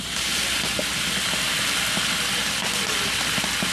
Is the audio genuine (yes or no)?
yes